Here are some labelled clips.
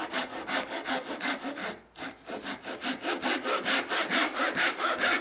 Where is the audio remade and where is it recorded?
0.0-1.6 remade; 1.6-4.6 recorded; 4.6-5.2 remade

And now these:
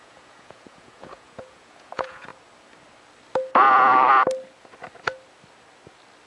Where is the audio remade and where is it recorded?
0.0-2.3 remade; 2.3-6.3 recorded

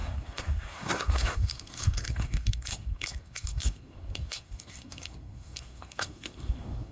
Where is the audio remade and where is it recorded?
0.0-6.9 remade

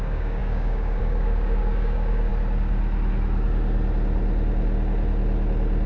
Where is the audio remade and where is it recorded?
0.0-2.3 remade; 2.3-5.9 recorded